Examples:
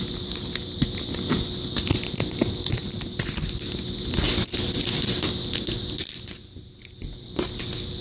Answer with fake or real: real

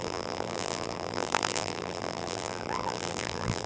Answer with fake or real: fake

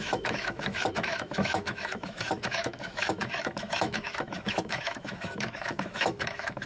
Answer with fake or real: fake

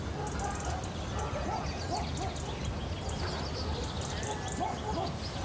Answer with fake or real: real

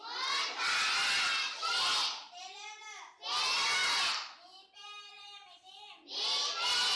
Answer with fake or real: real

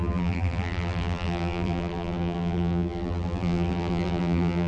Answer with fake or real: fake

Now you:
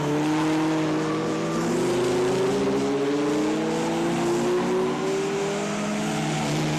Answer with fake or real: real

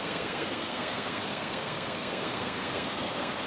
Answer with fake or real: fake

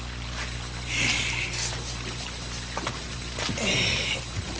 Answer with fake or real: real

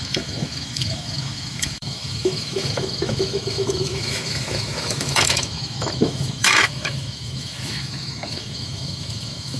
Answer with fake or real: fake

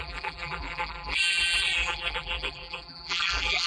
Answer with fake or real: fake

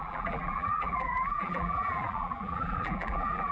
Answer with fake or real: fake